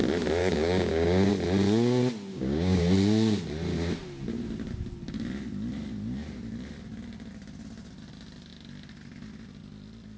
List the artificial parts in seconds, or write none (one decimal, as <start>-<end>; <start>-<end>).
0.4-1.3; 2.3-2.8